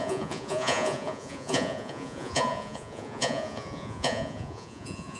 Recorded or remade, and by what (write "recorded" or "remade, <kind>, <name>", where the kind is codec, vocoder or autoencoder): remade, vocoder, Vocos